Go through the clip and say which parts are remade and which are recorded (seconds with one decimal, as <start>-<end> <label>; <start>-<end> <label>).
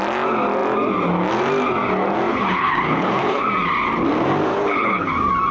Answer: 0.0-2.3 recorded; 2.3-3.4 remade; 3.4-4.5 recorded; 4.5-5.1 remade; 5.1-5.5 recorded